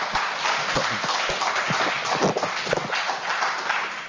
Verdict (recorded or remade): recorded